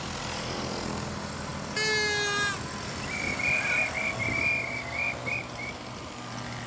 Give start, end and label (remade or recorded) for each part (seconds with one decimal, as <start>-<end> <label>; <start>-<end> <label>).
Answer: 0.0-6.7 recorded

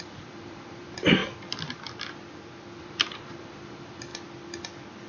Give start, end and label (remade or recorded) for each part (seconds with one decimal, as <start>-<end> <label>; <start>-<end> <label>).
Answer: 0.0-1.2 remade; 1.2-2.8 recorded; 2.8-4.1 remade; 4.1-5.1 recorded

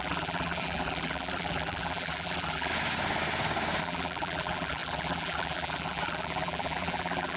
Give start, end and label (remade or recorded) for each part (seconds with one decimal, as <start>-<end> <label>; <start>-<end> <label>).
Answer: 0.0-2.7 remade; 2.7-3.8 recorded; 3.8-7.4 remade